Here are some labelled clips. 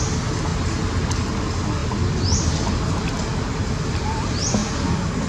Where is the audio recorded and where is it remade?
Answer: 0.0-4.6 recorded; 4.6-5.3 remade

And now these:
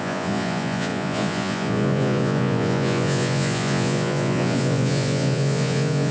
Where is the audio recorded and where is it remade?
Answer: 0.0-6.1 remade

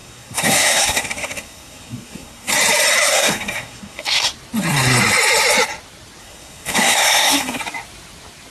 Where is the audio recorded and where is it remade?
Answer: 0.0-2.5 remade; 2.5-3.1 recorded; 3.1-4.3 remade; 4.3-6.2 recorded; 6.2-7.6 remade; 7.6-8.5 recorded

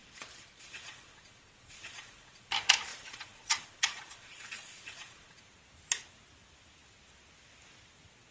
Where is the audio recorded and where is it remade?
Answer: 0.0-2.5 remade; 2.5-2.9 recorded; 2.9-5.4 remade; 5.4-8.3 recorded